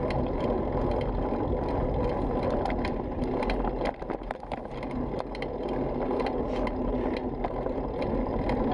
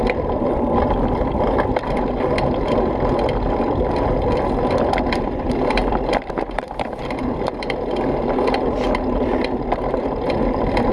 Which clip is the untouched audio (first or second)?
first